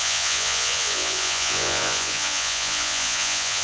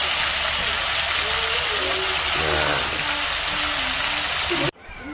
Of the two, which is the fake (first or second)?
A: first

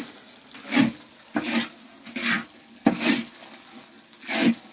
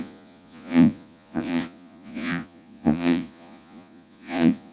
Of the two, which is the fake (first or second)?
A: second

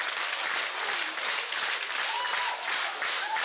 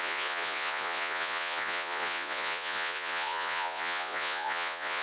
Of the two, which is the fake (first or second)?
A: second